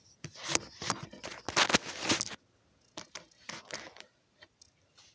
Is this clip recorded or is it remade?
recorded